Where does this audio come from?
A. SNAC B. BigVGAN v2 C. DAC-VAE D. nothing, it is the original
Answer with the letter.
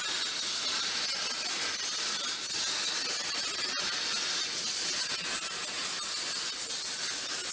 D